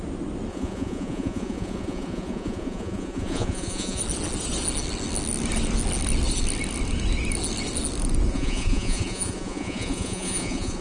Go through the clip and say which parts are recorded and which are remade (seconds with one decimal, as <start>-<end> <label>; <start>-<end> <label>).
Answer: 0.0-0.5 recorded; 0.5-4.0 remade; 4.0-8.3 recorded; 8.3-10.8 remade